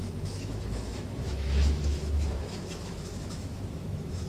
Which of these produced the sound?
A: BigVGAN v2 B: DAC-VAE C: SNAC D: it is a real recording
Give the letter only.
B